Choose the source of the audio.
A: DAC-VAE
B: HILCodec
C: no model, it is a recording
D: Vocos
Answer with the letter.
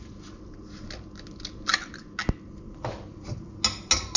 C